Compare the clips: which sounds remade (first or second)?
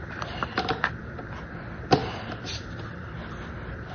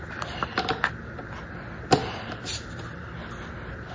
first